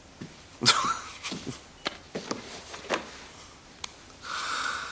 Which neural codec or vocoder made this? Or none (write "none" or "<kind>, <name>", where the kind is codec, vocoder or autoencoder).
none